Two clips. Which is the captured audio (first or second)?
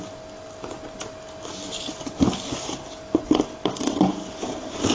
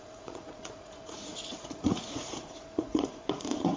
first